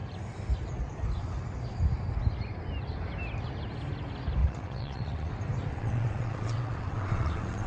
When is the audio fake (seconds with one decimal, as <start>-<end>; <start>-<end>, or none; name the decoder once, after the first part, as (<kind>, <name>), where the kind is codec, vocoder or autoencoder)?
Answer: 4.4-5.3 (vocoder, WaveNeXt); 5.7-7.7